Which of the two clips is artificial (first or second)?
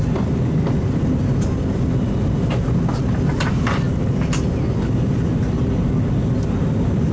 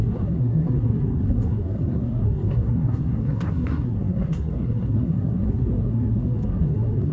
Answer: second